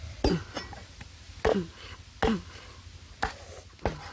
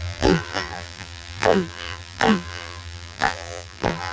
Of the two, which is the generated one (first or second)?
second